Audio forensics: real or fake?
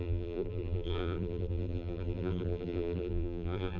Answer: fake